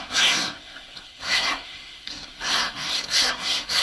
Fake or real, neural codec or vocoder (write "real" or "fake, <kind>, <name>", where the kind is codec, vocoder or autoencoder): fake, codec, SNAC